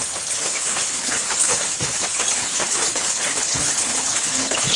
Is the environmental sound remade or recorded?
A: remade